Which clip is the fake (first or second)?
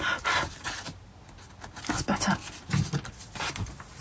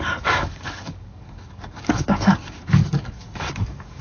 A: second